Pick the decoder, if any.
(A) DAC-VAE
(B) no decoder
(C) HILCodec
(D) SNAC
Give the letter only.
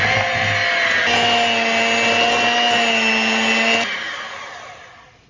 B